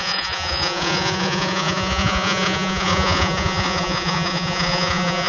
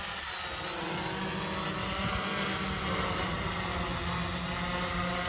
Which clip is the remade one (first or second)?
first